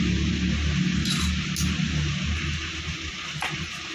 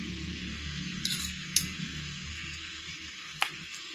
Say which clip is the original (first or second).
first